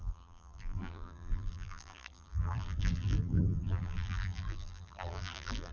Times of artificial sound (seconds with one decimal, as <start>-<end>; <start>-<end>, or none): 0.0-5.7